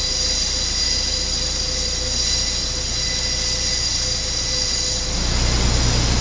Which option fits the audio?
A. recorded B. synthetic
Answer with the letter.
A